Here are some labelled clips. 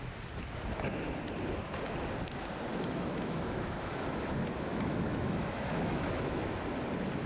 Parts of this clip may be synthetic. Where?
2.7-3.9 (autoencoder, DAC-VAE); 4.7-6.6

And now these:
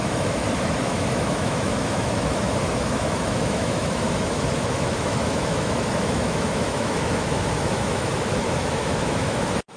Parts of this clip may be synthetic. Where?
0.0-9.8 (autoencoder, DAC-VAE)